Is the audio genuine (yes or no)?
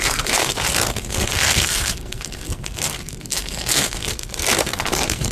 no